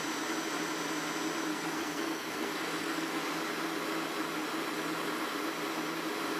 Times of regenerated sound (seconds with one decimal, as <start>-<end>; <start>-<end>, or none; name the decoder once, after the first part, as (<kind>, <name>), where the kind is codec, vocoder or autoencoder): 1.5-3.2 (codec, SNAC)